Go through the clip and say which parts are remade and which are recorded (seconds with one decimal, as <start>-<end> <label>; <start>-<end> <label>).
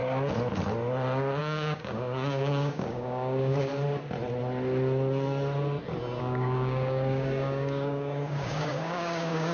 0.0-1.4 recorded; 1.4-3.7 remade; 3.7-6.2 recorded; 6.2-9.5 remade